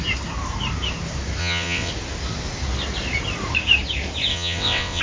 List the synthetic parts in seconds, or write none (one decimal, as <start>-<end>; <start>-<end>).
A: 1.4-1.9; 4.3-5.0